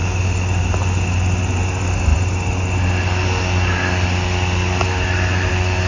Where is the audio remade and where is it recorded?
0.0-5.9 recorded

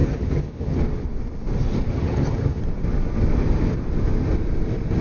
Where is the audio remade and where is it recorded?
0.0-0.8 remade; 0.8-1.9 recorded; 1.9-2.6 remade; 2.6-5.0 recorded

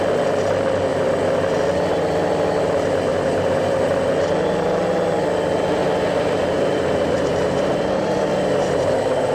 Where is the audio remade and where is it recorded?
0.0-3.1 recorded; 3.1-4.1 remade; 4.1-5.8 recorded; 5.8-9.3 remade

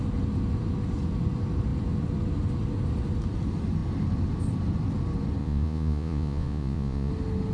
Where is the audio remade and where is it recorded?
0.0-5.4 recorded; 5.4-7.1 remade; 7.1-7.5 recorded

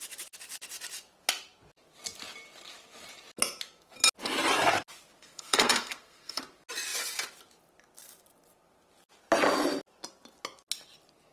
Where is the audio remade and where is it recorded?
0.0-5.2 recorded; 5.2-6.4 remade; 6.4-11.3 recorded

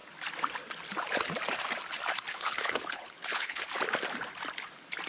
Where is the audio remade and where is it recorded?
0.0-2.3 recorded; 2.3-3.6 remade; 3.6-5.1 recorded

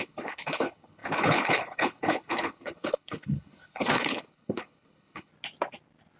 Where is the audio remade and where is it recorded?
0.0-5.3 remade; 5.3-6.2 recorded

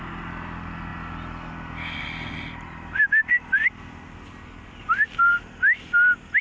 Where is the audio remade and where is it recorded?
0.0-6.4 recorded